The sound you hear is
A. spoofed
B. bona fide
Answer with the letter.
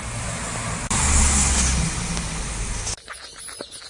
B